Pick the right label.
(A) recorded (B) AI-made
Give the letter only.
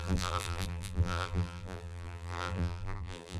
B